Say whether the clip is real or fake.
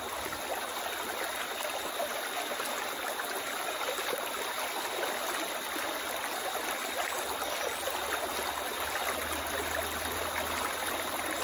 real